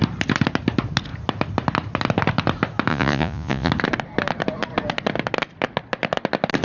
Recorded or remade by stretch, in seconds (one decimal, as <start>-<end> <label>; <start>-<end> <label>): 0.0-2.9 recorded; 2.9-3.7 remade; 3.7-6.6 recorded

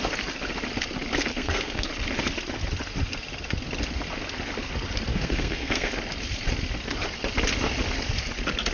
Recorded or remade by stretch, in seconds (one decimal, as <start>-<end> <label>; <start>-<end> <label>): 0.0-1.3 recorded; 1.3-1.9 remade; 1.9-5.1 recorded; 5.1-5.9 remade; 5.9-8.7 recorded

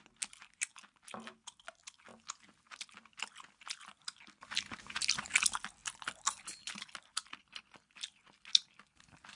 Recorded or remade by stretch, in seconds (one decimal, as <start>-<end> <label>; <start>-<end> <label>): 0.0-5.8 recorded; 5.8-7.6 remade; 7.6-9.4 recorded

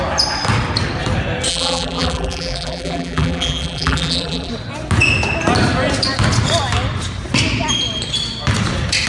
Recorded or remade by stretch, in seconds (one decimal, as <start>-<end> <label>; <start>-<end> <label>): 0.0-1.5 recorded; 1.5-4.5 remade; 4.5-9.1 recorded

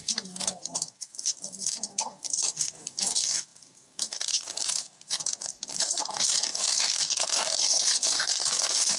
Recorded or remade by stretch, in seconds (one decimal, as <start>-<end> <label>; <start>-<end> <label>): 0.0-9.0 remade